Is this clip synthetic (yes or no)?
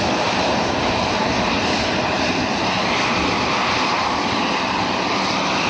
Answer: no